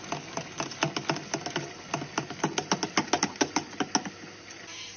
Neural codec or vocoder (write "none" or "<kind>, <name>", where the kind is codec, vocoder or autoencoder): none